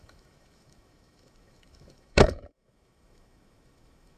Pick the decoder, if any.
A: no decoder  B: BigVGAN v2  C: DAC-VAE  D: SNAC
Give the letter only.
C